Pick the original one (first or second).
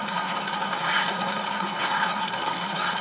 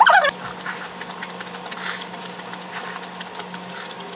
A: second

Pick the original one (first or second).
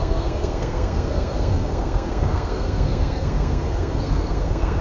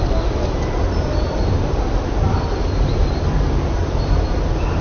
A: second